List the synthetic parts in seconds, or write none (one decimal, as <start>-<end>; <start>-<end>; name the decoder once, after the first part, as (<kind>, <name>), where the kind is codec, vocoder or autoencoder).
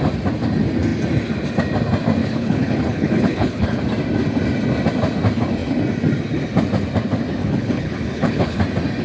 2.2-3.8 (codec, HILCodec); 7.4-8.6